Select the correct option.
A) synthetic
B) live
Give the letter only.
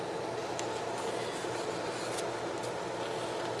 B